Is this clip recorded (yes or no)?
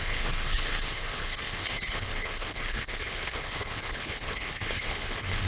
no